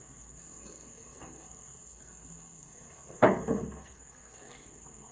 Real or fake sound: fake